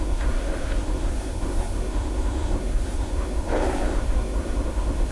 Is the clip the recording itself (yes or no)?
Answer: no